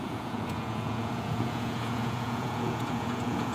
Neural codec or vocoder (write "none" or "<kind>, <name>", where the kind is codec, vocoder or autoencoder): vocoder, Vocos